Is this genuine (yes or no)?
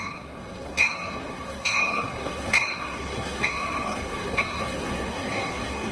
no